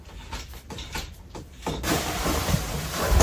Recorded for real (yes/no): no